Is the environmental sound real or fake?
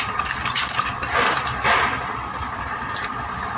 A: real